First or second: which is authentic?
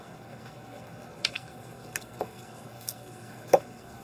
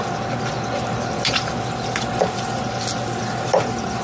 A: second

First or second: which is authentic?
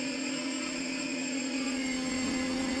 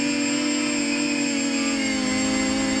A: second